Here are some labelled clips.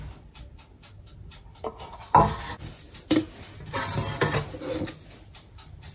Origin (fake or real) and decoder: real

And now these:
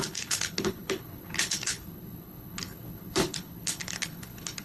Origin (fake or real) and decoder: fake, codec, HILCodec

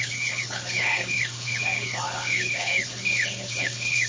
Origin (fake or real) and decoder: fake, codec, HILCodec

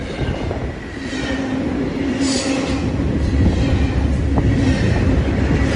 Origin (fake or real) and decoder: real